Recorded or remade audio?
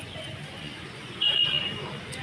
remade